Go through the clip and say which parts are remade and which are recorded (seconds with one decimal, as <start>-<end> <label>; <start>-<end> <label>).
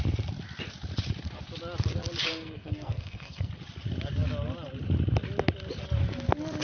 0.0-2.3 recorded; 2.3-3.5 remade; 3.5-6.6 recorded